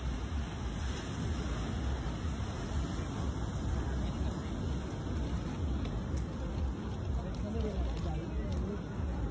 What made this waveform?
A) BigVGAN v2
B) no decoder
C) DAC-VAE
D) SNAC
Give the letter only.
B